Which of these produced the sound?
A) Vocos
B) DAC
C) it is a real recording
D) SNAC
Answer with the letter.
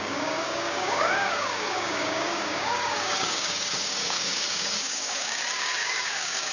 B